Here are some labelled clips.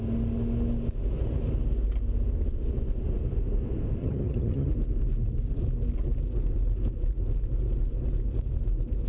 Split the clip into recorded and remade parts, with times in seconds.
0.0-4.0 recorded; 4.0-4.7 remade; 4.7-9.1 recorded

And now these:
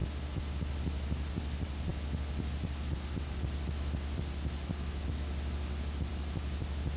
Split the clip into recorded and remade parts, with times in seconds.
0.0-7.0 recorded

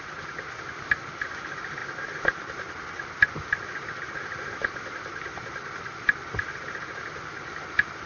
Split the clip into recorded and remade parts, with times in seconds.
0.0-8.1 recorded